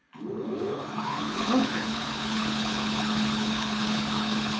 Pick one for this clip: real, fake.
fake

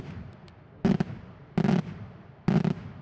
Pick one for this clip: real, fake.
real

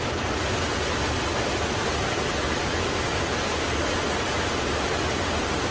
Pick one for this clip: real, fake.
real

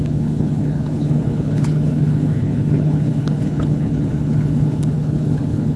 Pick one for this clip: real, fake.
fake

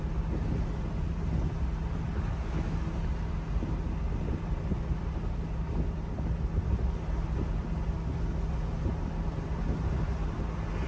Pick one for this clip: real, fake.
real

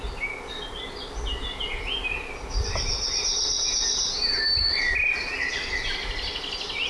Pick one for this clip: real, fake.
real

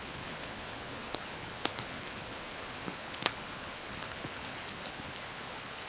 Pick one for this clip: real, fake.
fake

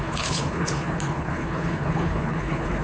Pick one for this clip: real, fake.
fake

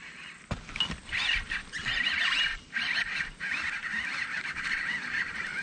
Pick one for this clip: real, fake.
real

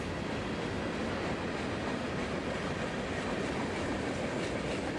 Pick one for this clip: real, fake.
real